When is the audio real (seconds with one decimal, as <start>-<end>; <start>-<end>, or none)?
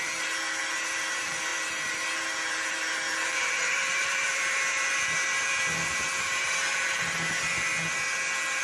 7.7-8.6